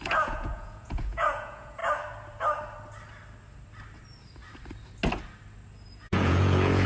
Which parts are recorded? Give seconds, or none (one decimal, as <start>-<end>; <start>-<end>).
1.8-5.9